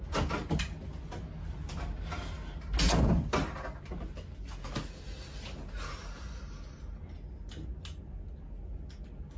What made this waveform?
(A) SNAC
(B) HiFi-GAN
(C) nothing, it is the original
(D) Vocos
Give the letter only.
C